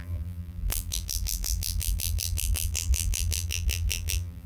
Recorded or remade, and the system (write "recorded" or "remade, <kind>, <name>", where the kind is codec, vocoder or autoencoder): remade, vocoder, BigVGAN v2